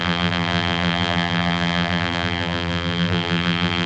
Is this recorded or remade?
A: remade